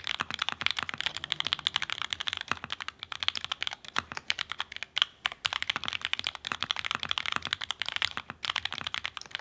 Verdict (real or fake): real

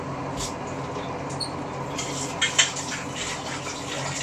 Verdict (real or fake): real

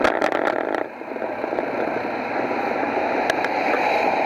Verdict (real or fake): real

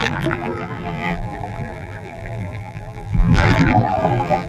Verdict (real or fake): fake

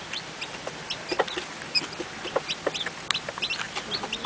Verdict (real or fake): real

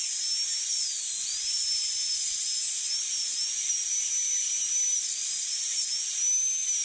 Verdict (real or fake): real